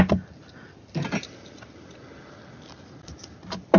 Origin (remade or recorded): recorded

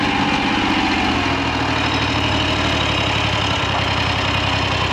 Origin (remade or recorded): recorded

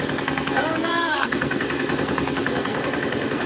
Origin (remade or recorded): remade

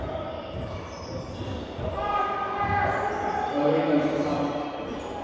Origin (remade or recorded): recorded